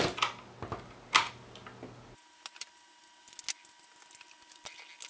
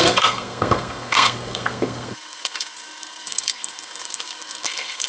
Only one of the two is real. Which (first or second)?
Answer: first